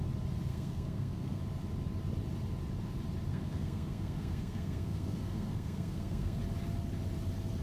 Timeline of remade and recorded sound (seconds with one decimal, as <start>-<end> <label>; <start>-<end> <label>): 0.0-0.5 recorded; 0.5-1.4 remade; 1.4-3.3 recorded; 3.3-6.4 remade; 6.4-7.6 recorded